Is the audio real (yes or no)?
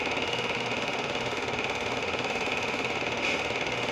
no